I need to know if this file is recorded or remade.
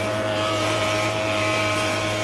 remade